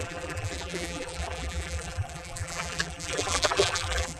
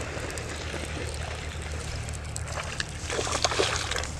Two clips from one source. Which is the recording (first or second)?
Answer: second